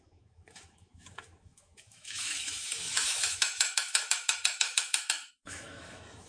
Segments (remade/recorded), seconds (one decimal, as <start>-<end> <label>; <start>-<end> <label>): 0.0-6.3 remade